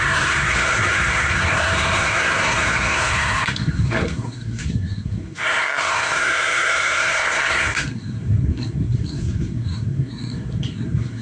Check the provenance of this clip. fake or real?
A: fake